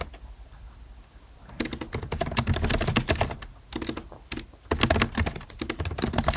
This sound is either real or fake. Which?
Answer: real